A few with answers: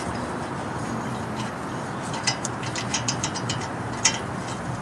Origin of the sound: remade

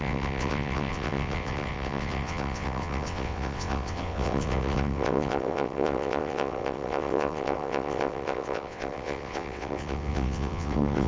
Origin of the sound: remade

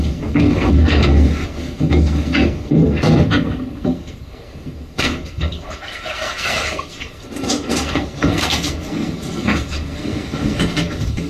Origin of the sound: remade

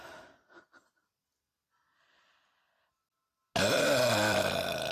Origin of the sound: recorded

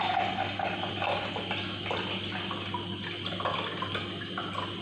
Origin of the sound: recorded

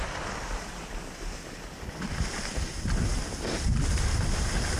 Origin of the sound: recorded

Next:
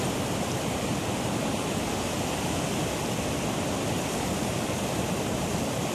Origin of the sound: recorded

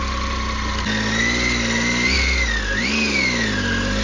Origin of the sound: recorded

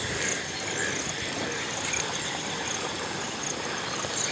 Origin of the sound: remade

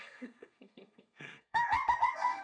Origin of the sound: remade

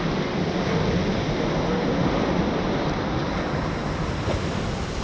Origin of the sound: recorded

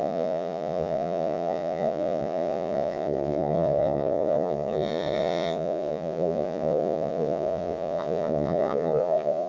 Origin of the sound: remade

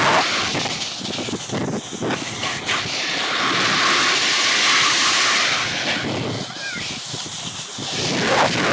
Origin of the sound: recorded